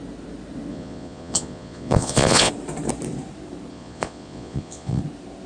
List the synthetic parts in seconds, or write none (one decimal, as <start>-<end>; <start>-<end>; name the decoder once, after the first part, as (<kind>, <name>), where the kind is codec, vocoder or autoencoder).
0.7-2.5 (vocoder, Vocos); 3.7-5.0